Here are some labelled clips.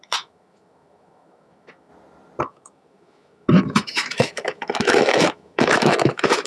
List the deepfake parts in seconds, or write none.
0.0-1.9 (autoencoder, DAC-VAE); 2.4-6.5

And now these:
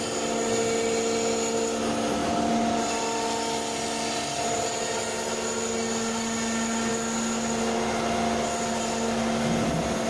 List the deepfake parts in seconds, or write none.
none

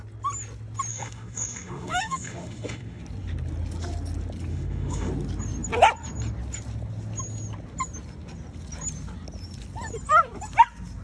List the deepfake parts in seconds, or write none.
0.9-3.0 (autoencoder, DAC-VAE); 4.5-5.1

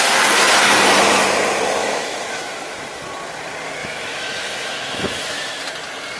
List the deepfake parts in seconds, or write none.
1.8-3.0 (autoencoder, DAC-VAE); 3.8-5.6

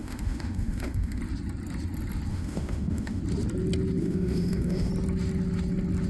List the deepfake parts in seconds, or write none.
0.0-1.2 (autoencoder, DAC-VAE); 2.3-3.2; 4.0-4.9

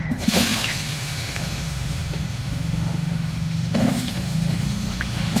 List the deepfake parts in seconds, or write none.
0.0-5.4 (autoencoder, DAC-VAE)

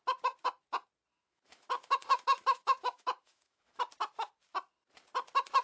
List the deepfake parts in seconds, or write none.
1.1-3.8 (autoencoder, DAC-VAE)